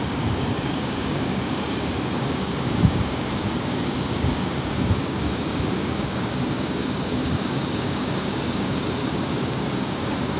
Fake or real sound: fake